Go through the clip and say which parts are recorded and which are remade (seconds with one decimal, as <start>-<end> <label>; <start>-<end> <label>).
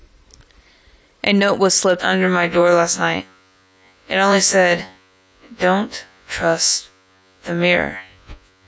0.0-2.0 recorded; 2.0-8.7 remade